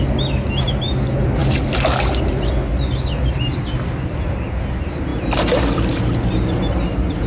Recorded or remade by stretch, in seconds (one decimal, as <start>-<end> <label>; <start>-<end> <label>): 0.0-7.3 recorded